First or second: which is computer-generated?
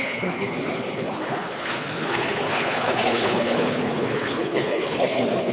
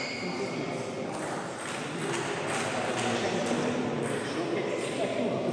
first